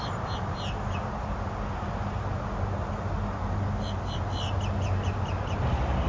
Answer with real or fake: real